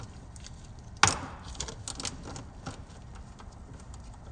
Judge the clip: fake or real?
real